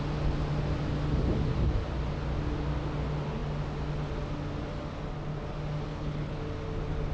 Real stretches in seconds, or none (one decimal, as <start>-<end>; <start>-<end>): 0.0-5.9; 6.4-7.1